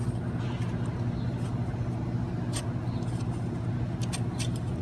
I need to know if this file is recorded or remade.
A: recorded